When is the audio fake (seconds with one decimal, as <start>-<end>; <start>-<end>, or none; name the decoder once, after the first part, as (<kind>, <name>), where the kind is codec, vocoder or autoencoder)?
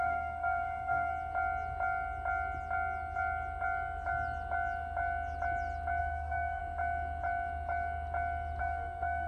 0.0-1.1 (codec, SNAC); 6.0-6.6; 8.6-9.3